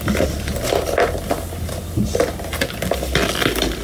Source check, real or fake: real